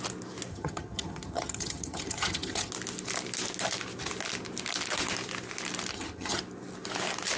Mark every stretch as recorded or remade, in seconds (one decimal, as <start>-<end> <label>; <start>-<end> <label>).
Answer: 0.0-0.5 recorded; 0.5-2.7 remade; 2.7-5.9 recorded; 5.9-6.4 remade; 6.4-7.4 recorded